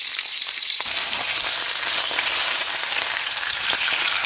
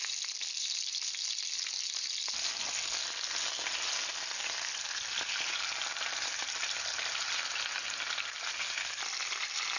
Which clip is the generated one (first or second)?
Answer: first